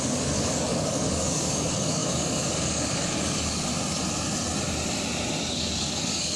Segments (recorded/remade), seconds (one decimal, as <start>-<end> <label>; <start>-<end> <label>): 0.0-3.7 remade; 3.7-5.5 recorded; 5.5-6.4 remade